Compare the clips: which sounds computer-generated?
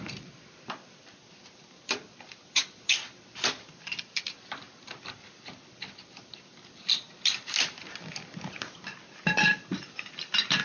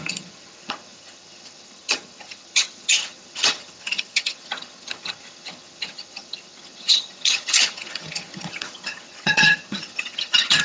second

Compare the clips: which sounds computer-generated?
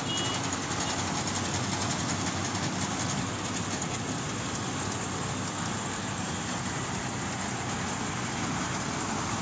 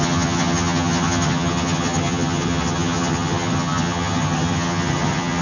second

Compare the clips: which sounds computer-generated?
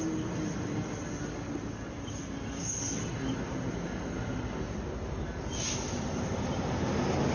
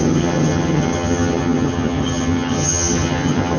second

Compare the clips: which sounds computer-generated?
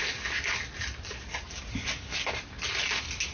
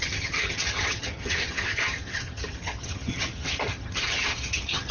second